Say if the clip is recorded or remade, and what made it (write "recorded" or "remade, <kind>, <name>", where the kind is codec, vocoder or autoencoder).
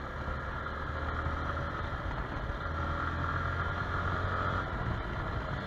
recorded